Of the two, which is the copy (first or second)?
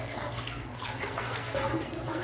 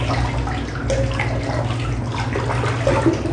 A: first